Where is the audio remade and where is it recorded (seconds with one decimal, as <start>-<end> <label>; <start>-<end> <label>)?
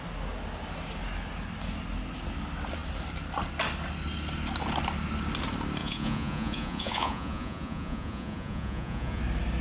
0.0-5.8 recorded; 5.8-9.2 remade; 9.2-9.6 recorded